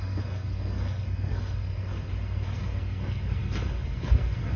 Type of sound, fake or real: fake